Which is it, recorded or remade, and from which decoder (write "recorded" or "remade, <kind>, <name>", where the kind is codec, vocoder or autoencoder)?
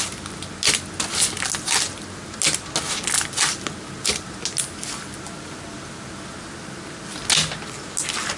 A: recorded